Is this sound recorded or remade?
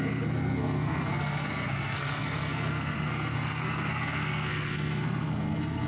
remade